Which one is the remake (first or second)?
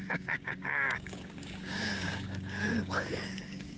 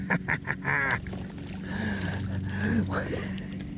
first